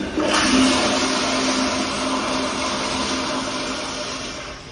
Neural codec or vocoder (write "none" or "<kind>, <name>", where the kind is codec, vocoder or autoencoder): none